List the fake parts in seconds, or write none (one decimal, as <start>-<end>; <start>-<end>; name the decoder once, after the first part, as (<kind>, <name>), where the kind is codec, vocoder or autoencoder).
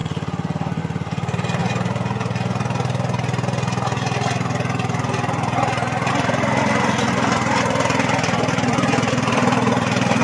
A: 0.0-1.6 (vocoder, BigVGAN v2); 6.1-10.2